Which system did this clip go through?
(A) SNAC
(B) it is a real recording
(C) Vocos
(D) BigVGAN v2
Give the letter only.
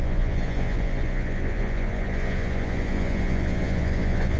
C